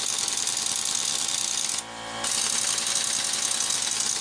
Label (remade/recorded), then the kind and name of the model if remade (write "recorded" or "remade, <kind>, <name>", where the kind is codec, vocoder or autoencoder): recorded